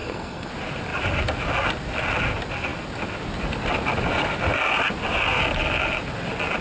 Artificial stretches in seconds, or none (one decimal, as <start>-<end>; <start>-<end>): 0.0-0.5